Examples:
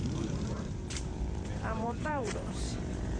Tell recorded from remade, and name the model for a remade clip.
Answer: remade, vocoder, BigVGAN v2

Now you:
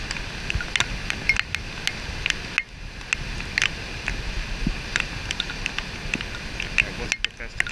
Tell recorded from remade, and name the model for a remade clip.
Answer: recorded